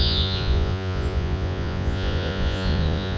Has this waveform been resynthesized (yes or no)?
yes